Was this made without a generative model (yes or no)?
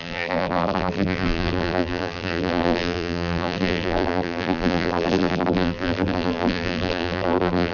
no